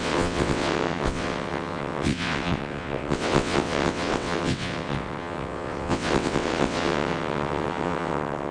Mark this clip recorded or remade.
remade